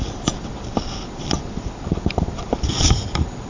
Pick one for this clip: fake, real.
fake